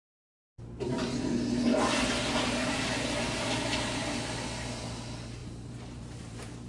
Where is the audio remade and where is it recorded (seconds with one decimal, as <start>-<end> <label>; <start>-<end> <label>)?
0.0-5.4 recorded; 5.4-6.7 remade